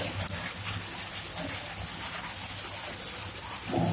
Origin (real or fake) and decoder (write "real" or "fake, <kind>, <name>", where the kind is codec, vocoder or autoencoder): real